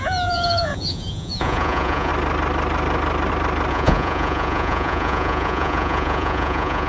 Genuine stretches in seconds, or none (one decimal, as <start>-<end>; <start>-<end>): 2.1-3.7